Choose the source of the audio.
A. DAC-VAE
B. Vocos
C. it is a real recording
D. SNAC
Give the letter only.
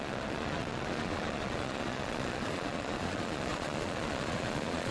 B